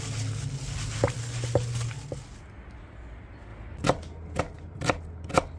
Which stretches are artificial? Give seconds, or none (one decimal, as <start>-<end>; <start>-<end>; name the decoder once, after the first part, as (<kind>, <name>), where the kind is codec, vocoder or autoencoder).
none